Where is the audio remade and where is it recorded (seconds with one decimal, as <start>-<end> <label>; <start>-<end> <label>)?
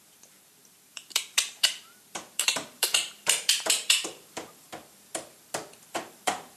0.0-4.7 remade; 4.7-5.8 recorded; 5.8-6.6 remade